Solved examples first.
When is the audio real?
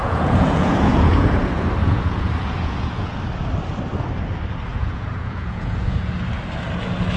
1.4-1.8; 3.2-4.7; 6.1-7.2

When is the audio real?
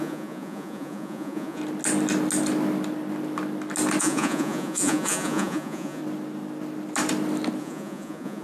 1.6-4.0; 6.0-7.6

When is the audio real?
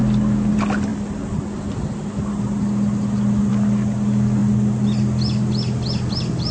0.0-6.5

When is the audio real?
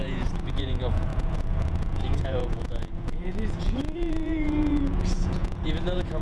none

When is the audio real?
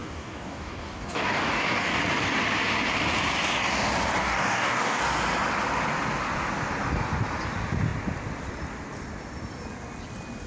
2.0-4.2; 5.0-10.5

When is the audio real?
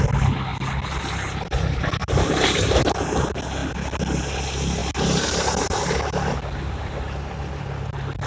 0.0-2.0; 2.8-8.3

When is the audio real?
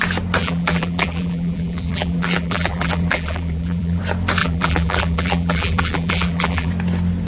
0.0-0.4; 4.0-4.4; 6.7-7.3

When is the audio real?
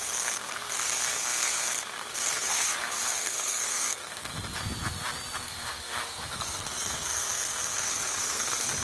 4.3-5.4